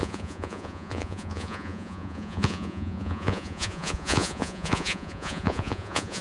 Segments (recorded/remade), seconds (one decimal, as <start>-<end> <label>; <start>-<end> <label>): 0.0-6.2 remade